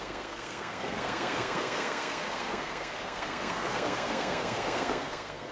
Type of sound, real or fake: fake